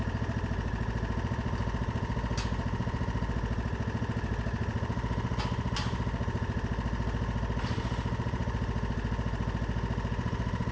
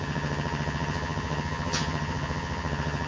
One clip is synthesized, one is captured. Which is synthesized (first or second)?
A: second